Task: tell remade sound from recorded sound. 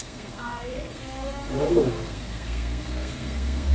remade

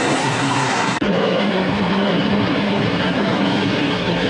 remade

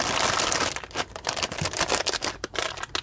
recorded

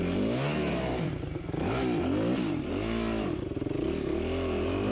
recorded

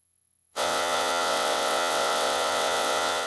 remade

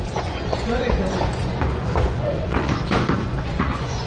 remade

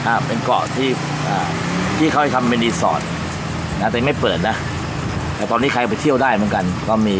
recorded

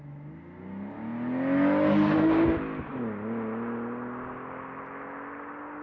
recorded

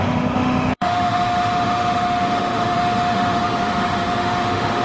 remade